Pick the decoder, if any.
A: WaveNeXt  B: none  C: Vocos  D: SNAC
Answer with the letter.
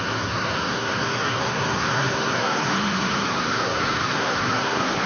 D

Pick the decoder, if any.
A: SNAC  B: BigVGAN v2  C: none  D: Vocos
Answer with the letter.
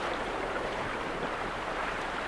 B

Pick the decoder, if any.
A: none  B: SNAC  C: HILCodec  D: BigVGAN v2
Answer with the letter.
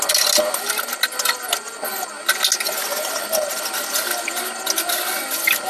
A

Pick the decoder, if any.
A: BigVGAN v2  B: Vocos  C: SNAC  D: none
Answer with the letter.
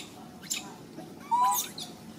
D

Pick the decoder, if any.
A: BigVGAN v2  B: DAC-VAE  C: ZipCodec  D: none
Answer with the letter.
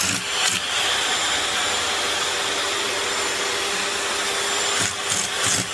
D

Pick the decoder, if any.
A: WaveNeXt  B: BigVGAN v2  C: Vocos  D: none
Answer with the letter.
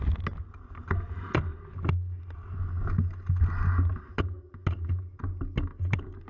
D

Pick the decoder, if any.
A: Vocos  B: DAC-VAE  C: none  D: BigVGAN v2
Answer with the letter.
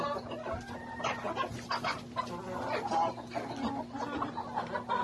C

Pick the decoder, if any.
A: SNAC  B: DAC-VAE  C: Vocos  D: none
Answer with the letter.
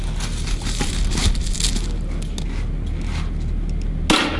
D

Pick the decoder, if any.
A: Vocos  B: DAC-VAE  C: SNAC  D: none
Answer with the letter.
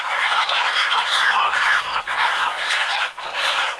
C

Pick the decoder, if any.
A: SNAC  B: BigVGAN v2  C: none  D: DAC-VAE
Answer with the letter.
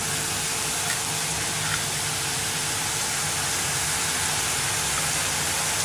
C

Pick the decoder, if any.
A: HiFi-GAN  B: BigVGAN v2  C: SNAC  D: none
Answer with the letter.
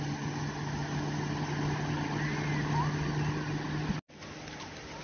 D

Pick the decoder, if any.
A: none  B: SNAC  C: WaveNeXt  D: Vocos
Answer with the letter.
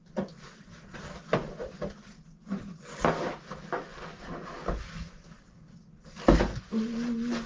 A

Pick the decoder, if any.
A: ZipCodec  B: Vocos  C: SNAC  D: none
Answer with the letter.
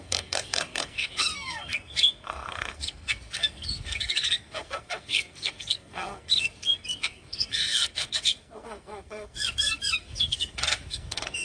C